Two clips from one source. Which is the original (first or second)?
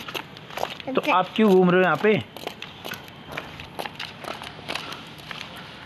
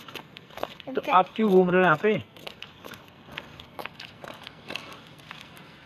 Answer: first